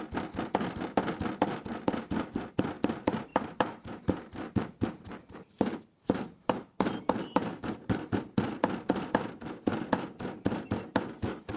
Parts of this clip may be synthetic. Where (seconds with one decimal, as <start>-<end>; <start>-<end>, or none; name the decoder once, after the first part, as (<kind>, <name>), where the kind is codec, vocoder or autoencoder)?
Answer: 3.3-8.1 (vocoder, BigVGAN v2)